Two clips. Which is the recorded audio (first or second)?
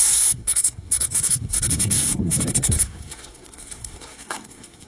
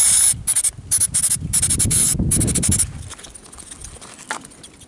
second